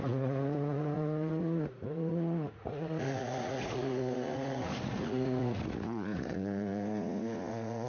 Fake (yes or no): yes